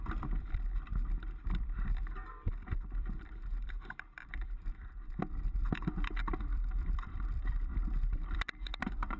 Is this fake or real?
fake